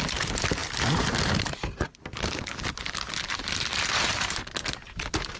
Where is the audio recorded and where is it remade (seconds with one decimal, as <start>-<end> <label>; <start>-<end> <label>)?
0.0-5.4 recorded